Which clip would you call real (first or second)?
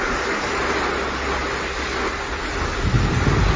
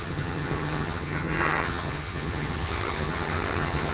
first